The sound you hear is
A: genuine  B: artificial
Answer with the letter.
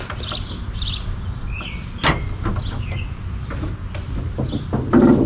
A